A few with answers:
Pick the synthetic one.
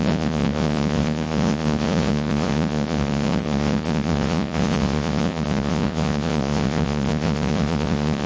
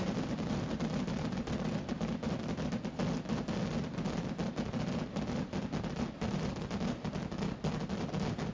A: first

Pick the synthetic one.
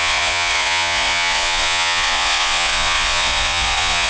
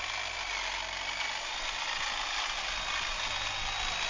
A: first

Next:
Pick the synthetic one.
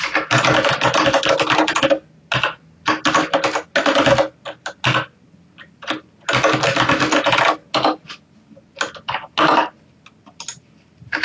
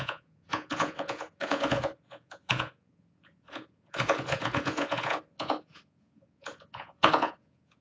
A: second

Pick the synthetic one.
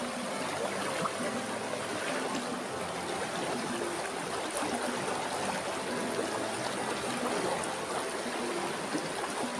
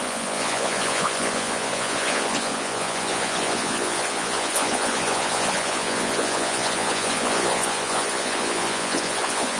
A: second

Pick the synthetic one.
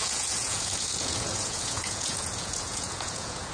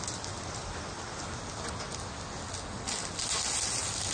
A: first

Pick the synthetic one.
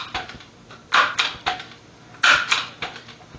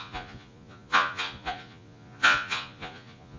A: second